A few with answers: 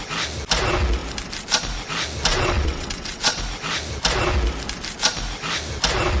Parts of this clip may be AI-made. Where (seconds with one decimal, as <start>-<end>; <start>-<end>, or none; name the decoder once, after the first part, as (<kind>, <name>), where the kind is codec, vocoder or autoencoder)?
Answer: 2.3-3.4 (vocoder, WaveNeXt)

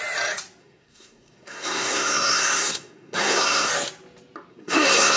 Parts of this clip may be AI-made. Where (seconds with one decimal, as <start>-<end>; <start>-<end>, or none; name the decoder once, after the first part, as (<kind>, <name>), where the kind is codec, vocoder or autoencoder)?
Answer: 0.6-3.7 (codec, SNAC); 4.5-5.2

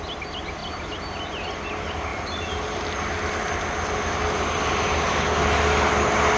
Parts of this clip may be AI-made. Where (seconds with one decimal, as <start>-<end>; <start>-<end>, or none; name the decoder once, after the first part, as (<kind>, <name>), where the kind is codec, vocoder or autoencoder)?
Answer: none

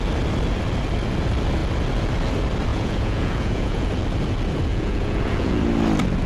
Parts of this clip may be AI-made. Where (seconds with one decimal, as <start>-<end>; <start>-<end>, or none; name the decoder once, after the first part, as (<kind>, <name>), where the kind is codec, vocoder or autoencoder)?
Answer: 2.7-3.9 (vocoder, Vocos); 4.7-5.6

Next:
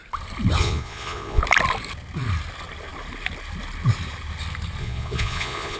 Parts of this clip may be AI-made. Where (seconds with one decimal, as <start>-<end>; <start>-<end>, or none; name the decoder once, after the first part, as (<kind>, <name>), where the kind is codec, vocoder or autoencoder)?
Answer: 0.6-1.4 (vocoder, Vocos); 4.8-5.8